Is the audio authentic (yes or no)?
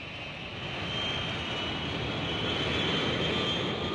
yes